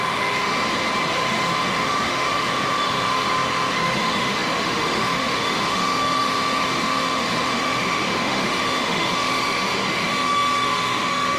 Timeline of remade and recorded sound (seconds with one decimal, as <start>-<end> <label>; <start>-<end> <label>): 0.0-0.5 remade; 0.5-1.1 recorded; 1.1-11.4 remade